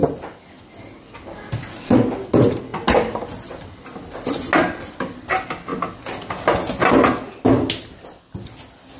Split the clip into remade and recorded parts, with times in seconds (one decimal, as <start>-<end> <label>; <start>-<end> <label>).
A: 0.0-9.0 recorded